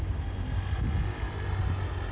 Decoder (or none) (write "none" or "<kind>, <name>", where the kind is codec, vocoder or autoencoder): none